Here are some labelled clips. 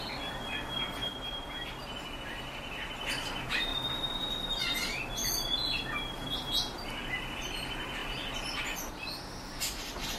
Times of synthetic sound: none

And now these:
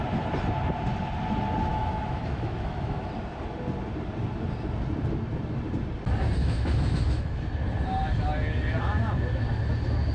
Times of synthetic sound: 1.7-3.1 (autoencoder, DAC-VAE); 6.4-7.4

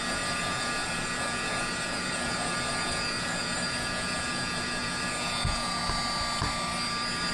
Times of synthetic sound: 0.0-5.8 (vocoder, Vocos)

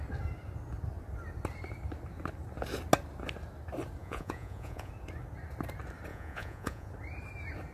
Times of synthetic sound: 4.0-4.9 (vocoder, Vocos); 6.1-6.9

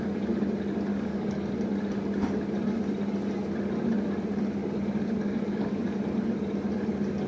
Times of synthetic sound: 0.9-1.5 (codec, DAC); 5.2-6.0

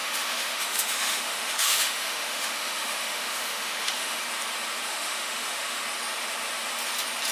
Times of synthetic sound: 0.0-4.2 (autoencoder, DAC-VAE); 4.9-5.8

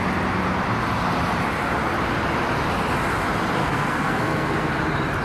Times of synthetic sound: 3.6-4.7 (codec, SNAC)